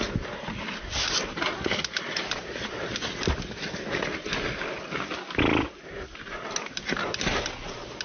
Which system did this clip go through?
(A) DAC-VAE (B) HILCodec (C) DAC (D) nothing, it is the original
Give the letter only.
D